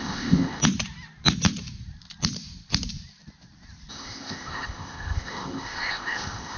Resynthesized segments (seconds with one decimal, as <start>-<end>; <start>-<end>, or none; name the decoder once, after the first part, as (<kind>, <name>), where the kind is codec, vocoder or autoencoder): 0.0-0.6 (codec, ZipCodec); 3.9-6.6